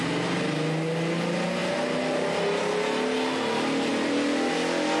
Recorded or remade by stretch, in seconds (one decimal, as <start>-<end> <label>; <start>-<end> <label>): 0.0-5.0 recorded